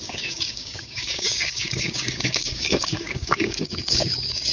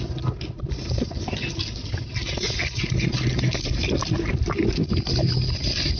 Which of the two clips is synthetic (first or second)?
first